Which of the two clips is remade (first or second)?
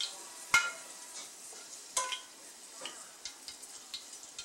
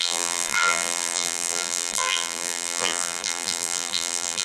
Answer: second